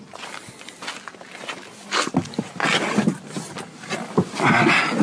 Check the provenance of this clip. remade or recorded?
recorded